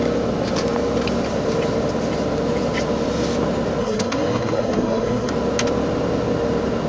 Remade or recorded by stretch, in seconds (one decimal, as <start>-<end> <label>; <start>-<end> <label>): 0.0-3.8 recorded; 3.8-5.3 remade; 5.3-6.9 recorded